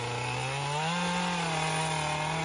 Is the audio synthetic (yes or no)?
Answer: no